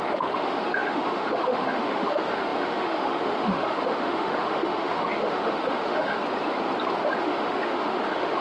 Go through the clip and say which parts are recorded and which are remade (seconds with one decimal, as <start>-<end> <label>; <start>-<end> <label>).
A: 0.0-6.2 remade; 6.2-7.2 recorded; 7.2-8.4 remade